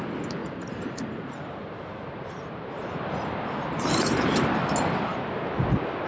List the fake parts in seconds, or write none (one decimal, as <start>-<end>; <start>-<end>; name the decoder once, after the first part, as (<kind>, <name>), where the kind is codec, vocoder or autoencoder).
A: 0.4-3.1 (vocoder, BigVGAN v2)